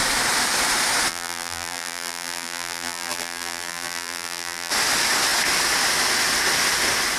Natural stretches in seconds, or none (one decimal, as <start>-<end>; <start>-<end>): 0.0-1.1; 4.7-7.2